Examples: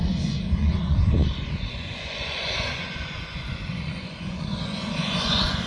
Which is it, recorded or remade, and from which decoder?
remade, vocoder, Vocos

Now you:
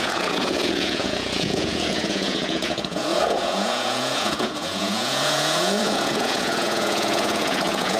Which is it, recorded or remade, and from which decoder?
remade, vocoder, Vocos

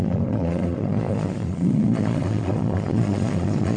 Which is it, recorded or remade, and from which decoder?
remade, vocoder, Vocos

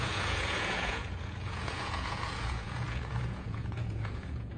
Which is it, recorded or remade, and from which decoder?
remade, vocoder, Vocos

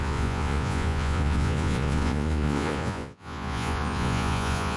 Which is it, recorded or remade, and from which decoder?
remade, vocoder, Vocos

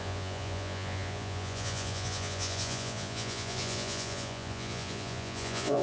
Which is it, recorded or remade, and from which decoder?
remade, vocoder, Vocos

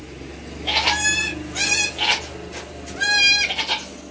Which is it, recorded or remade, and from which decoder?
recorded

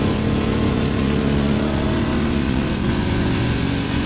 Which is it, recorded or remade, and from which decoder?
remade, vocoder, Vocos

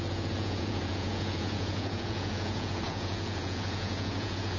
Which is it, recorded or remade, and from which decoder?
remade, vocoder, Vocos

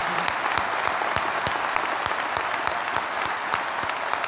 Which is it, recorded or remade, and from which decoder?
recorded